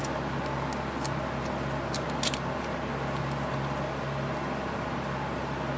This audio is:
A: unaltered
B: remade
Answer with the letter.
A